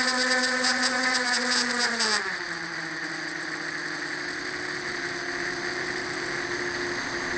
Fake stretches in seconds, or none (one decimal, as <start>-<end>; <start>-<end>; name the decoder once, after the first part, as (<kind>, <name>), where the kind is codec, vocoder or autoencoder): none